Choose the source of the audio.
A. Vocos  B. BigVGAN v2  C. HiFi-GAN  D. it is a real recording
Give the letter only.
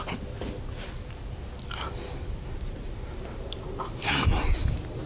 D